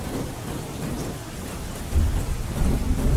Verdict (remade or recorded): recorded